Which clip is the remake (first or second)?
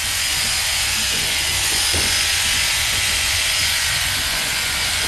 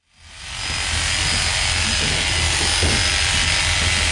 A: first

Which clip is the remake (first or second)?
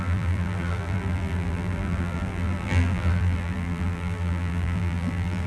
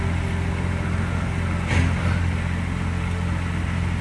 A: first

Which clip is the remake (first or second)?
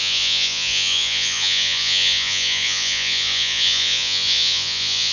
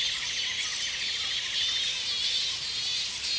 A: first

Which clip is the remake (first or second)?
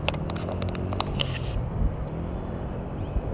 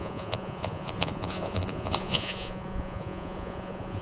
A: second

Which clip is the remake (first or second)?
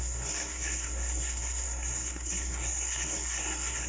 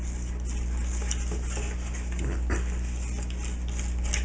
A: first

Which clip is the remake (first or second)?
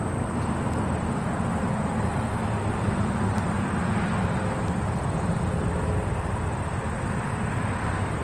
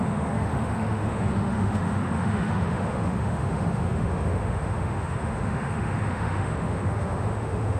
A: second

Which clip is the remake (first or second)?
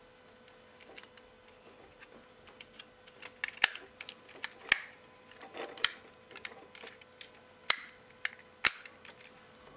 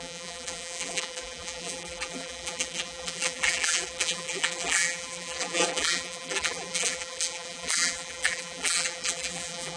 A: second